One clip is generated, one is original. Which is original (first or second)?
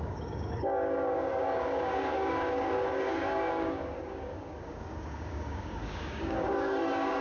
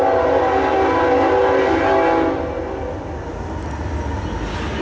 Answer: second